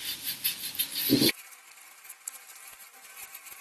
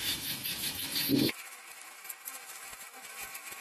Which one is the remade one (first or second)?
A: second